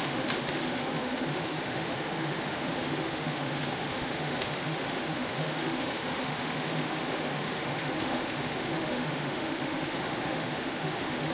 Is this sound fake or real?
fake